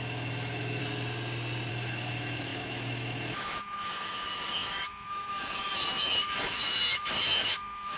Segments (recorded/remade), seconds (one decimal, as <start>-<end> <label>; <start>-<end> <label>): 0.0-0.8 remade; 0.8-1.7 recorded; 1.7-8.0 remade